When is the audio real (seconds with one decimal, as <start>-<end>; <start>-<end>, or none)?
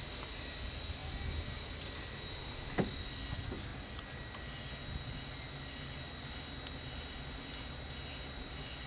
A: 0.0-8.9